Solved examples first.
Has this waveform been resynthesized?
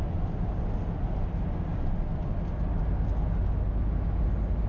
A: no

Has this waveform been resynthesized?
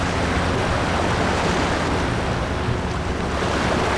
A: no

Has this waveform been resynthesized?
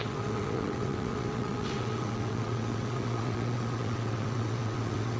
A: yes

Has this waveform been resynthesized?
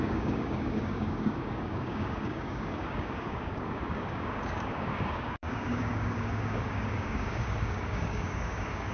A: yes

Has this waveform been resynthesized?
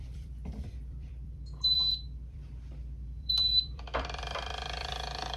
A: yes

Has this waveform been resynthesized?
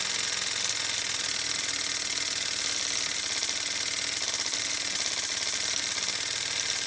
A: no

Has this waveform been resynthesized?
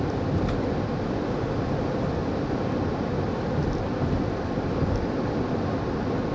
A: no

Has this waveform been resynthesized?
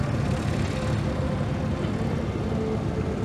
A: no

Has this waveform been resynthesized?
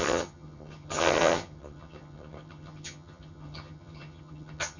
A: yes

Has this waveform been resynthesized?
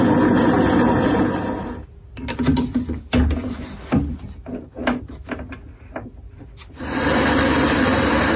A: no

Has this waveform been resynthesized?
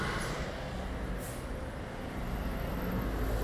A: no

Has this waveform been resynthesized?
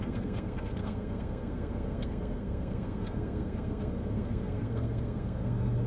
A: yes